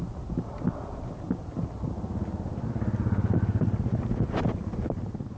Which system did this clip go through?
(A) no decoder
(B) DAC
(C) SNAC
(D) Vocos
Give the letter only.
A